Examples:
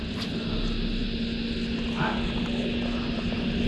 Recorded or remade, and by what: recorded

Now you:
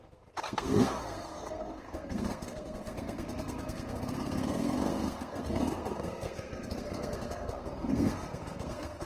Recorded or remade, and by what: remade, codec, SNAC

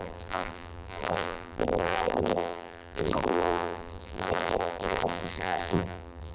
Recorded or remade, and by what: remade, vocoder, BigVGAN v2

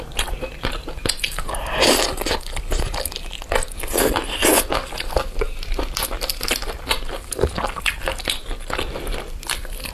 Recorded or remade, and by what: recorded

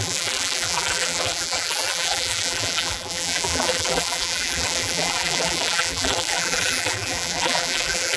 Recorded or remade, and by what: remade, vocoder, BigVGAN v2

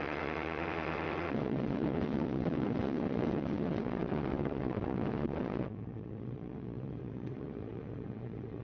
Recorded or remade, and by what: remade, vocoder, WaveNeXt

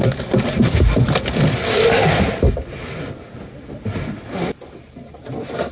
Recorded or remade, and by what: recorded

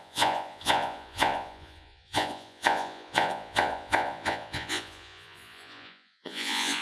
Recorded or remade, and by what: remade, vocoder, Vocos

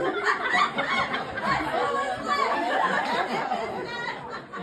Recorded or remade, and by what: recorded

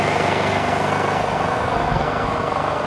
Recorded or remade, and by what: remade, codec, SNAC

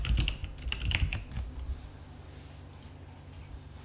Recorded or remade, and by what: recorded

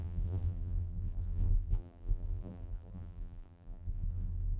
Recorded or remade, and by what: remade, vocoder, BigVGAN v2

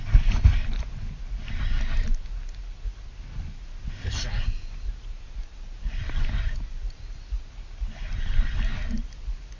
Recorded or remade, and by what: recorded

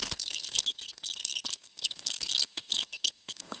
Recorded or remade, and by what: remade, codec, SNAC